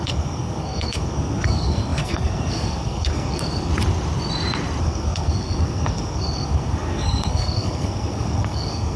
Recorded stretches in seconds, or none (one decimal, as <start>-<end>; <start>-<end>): 3.7-4.8